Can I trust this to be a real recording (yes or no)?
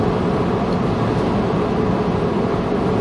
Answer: yes